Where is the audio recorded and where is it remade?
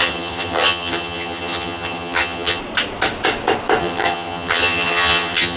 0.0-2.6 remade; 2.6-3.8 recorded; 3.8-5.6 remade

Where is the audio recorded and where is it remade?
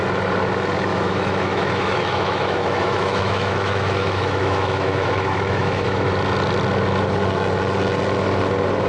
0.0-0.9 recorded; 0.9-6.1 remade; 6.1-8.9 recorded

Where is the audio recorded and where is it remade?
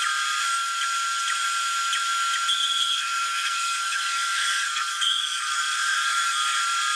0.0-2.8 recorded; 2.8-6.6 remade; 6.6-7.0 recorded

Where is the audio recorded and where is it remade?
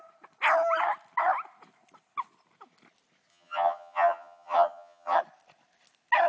0.0-3.3 recorded; 3.3-5.2 remade; 5.2-6.3 recorded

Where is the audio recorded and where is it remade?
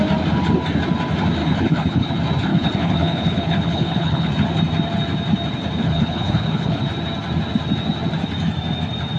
0.0-1.4 recorded; 1.4-2.1 remade; 2.1-2.5 recorded; 2.5-4.3 remade; 4.3-5.8 recorded; 5.8-6.8 remade; 6.8-9.2 recorded